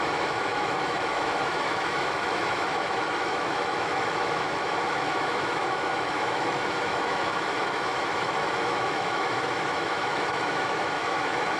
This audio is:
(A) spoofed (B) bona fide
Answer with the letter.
A